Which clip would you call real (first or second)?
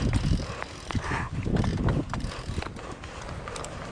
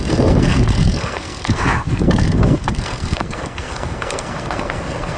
first